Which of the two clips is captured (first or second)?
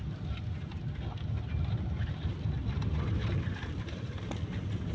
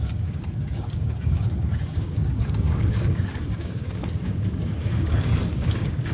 first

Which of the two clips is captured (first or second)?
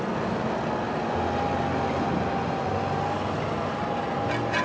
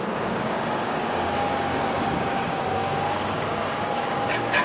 first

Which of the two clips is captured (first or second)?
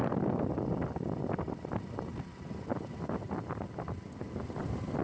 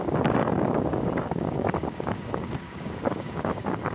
first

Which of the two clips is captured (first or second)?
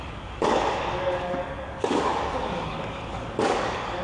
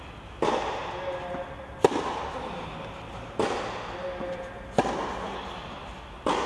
second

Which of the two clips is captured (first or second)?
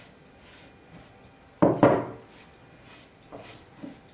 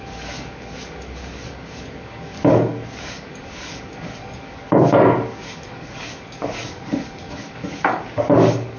first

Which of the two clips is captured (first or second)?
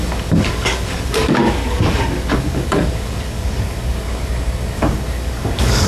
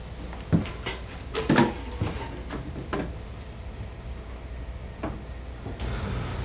second